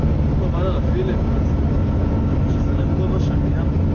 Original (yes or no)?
yes